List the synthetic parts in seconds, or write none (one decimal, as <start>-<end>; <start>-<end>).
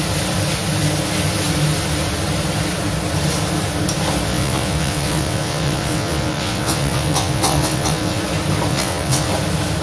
4.3-8.2; 8.7-9.3